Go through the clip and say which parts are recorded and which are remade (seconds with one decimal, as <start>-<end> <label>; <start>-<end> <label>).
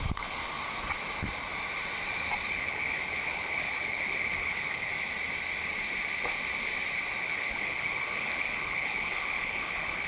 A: 0.0-0.4 remade; 0.4-2.5 recorded; 2.5-4.9 remade; 4.9-7.2 recorded; 7.2-10.1 remade